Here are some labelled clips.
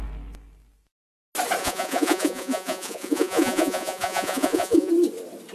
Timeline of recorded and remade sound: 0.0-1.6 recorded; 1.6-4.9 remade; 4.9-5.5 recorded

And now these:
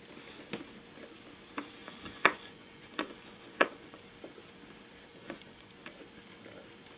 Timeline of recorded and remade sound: 0.0-1.8 recorded; 1.8-4.0 remade; 4.0-5.1 recorded; 5.1-5.7 remade; 5.7-7.0 recorded

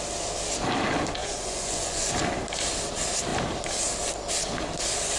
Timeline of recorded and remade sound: 0.0-1.2 recorded; 1.2-2.1 remade; 2.1-5.2 recorded

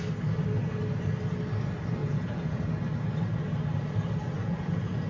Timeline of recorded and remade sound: 0.0-2.0 recorded; 2.0-2.6 remade; 2.6-4.4 recorded; 4.4-5.1 remade

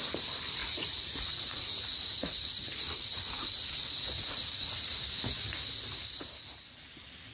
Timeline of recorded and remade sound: 0.0-0.6 recorded; 0.6-5.0 remade; 5.0-7.3 recorded

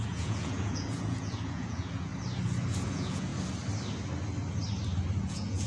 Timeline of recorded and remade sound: 0.0-2.1 remade; 2.1-2.9 recorded; 2.9-3.3 remade; 3.3-5.2 recorded; 5.2-5.7 remade

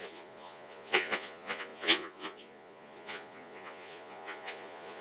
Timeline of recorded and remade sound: 0.0-5.0 remade